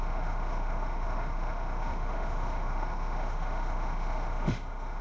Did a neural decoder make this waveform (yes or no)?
yes